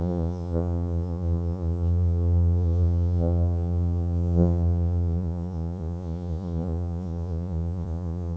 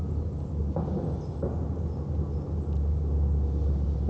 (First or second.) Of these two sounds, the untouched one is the second